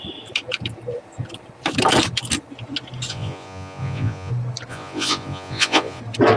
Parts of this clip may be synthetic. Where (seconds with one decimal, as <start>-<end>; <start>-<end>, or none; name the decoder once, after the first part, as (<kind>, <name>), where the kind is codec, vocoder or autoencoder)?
3.1-4.3 (vocoder, Vocos); 4.7-6.0